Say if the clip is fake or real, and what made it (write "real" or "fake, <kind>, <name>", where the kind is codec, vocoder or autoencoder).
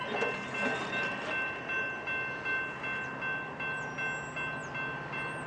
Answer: real